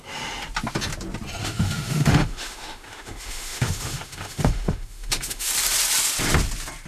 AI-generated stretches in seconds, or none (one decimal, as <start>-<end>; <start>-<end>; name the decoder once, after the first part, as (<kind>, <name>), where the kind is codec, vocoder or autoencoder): 1.4-5.5 (autoencoder, DAC-VAE)